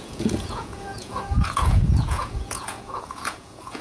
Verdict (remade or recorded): remade